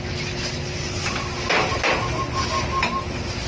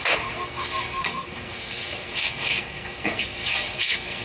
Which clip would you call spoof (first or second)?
second